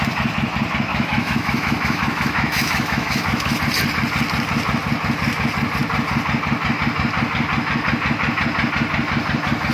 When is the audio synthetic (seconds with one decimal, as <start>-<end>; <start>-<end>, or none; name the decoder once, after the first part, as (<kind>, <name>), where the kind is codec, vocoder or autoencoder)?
0.9-3.6 (autoencoder, DAC-VAE)